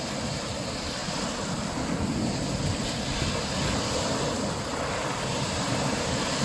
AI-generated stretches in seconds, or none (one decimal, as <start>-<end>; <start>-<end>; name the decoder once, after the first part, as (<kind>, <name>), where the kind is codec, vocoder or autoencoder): 0.0-1.0 (vocoder, BigVGAN v2); 4.0-4.7; 5.3-6.4